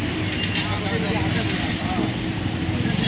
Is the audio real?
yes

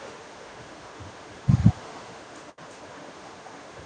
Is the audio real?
no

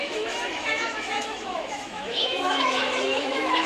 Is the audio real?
no